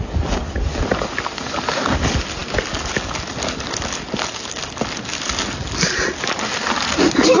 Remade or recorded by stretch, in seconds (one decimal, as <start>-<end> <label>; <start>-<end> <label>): 0.0-7.4 recorded